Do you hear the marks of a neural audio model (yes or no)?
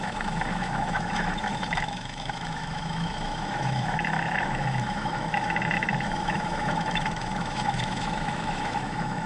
yes